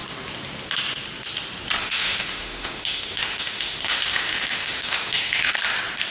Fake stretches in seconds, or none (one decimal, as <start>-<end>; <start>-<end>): 1.8-5.5